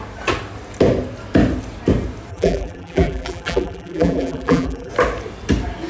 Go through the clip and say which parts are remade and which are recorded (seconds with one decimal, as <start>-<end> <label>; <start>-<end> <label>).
0.0-2.3 recorded; 2.3-4.9 remade; 4.9-5.9 recorded